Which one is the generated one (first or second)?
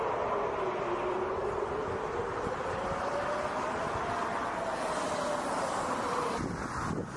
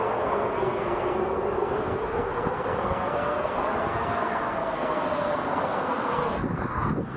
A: second